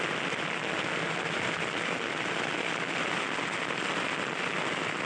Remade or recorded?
recorded